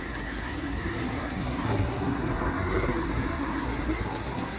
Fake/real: fake